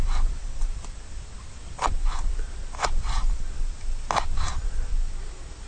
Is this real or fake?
real